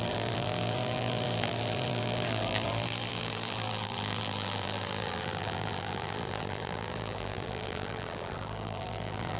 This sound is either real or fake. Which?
fake